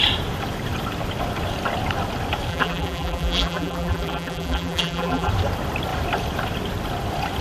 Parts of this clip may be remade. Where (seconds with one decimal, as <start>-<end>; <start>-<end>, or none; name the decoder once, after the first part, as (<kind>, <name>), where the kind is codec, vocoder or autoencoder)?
2.5-5.3 (vocoder, BigVGAN v2)